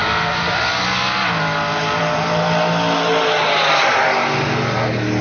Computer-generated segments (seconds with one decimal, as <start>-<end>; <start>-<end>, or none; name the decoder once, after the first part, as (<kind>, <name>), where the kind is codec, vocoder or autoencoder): none